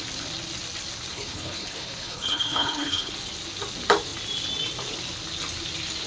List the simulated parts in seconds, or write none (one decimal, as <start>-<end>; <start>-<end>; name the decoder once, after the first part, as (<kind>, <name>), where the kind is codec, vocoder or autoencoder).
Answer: 1.1-3.1 (codec, HILCodec)